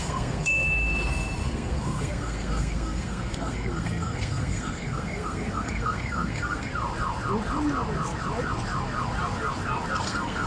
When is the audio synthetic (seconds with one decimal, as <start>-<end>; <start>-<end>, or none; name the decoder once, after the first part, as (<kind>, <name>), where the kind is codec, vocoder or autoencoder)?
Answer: 0.0-6.7 (codec, SNAC); 10.0-10.5